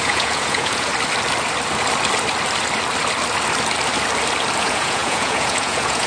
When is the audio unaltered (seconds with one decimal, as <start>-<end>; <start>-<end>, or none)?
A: 0.9-4.6